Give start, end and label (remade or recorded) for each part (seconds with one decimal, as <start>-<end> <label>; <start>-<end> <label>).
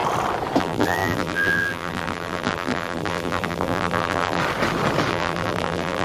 0.0-0.6 recorded; 0.6-4.4 remade; 4.4-5.1 recorded; 5.1-6.0 remade